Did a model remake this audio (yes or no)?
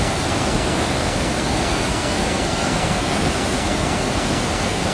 yes